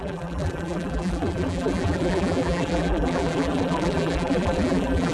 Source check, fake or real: fake